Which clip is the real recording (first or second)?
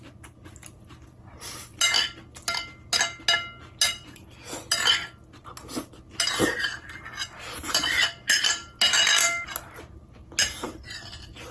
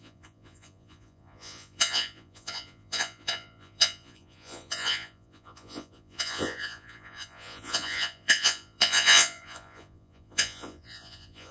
first